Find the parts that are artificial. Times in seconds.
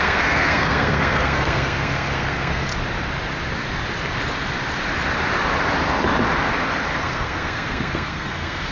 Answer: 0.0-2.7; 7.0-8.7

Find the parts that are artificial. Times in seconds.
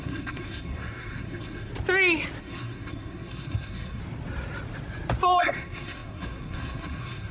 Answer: 0.0-1.7; 2.4-4.0; 5.4-7.3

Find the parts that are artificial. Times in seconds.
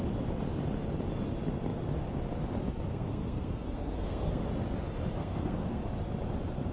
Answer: 2.9-4.4; 5.2-5.8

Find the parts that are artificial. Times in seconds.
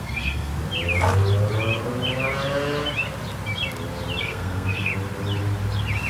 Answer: 0.0-0.5; 4.2-4.9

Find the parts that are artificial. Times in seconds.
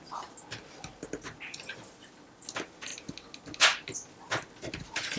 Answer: none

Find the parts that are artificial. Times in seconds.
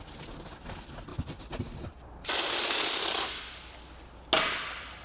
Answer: none